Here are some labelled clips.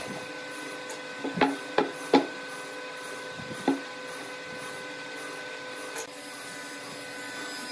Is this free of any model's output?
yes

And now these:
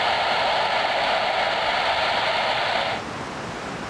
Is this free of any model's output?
yes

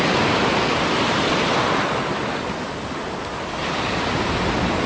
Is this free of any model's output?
yes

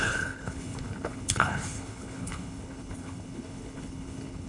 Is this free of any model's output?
no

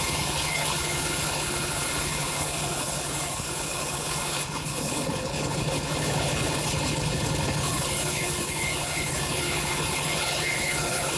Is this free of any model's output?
no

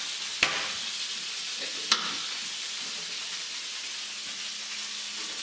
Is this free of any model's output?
yes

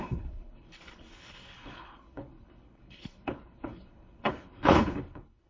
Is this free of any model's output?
no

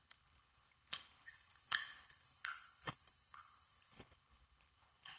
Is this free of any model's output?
no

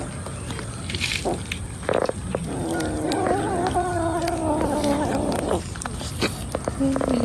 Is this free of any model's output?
yes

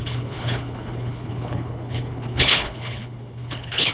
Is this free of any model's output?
no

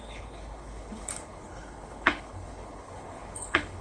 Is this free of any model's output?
no